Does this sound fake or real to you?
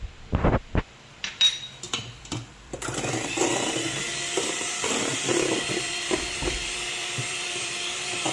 fake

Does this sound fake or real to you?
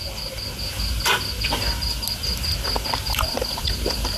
real